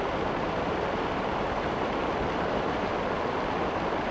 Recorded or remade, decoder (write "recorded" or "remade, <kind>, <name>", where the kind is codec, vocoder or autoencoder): recorded